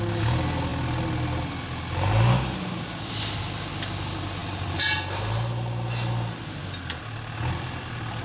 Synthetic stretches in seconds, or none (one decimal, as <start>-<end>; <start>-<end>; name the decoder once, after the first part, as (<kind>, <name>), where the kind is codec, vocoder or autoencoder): none